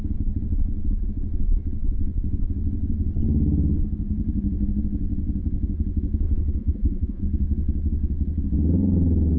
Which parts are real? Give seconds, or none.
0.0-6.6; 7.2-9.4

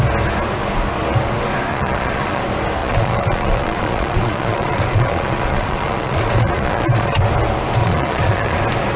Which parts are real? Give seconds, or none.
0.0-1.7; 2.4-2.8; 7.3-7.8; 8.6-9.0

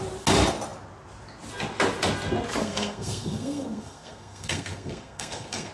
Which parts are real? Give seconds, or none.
0.0-2.6